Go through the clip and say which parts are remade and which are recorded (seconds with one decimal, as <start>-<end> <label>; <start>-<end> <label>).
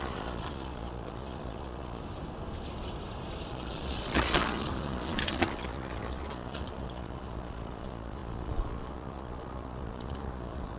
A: 0.0-2.0 remade; 2.0-3.5 recorded; 3.5-10.8 remade